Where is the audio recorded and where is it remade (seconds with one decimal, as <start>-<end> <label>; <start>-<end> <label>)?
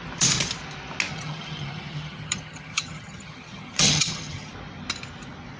0.0-1.1 recorded; 1.1-4.5 remade; 4.5-5.6 recorded